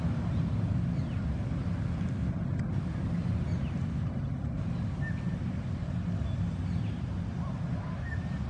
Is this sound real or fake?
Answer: real